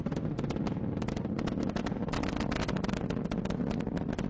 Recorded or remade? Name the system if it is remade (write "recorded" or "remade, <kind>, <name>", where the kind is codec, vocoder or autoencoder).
recorded